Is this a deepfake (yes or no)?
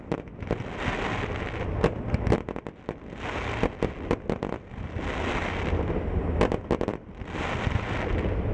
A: no